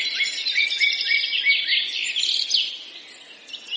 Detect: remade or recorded recorded